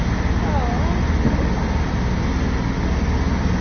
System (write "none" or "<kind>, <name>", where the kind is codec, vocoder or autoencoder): none